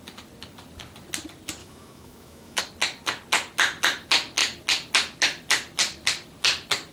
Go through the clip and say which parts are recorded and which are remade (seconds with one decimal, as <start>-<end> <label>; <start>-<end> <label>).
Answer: 0.0-1.6 recorded; 1.6-2.6 remade; 2.6-6.9 recorded